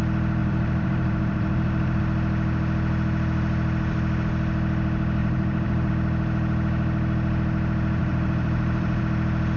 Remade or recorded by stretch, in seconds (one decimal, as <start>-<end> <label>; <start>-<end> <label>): 0.0-0.4 recorded; 0.4-2.0 remade; 2.0-5.2 recorded; 5.2-5.9 remade; 5.9-8.0 recorded; 8.0-9.0 remade; 9.0-9.6 recorded